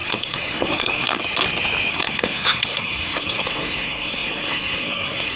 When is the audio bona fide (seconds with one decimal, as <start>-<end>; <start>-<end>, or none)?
1.2-1.9